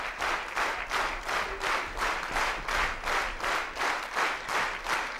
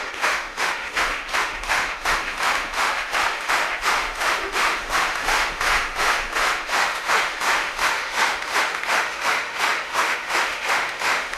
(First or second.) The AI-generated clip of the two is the second